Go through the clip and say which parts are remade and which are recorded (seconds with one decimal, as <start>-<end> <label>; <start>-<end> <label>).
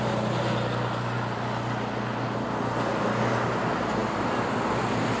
0.0-5.2 recorded